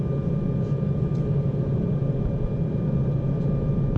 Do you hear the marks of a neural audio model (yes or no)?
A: no